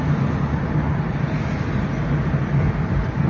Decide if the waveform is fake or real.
real